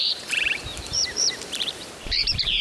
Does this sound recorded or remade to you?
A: remade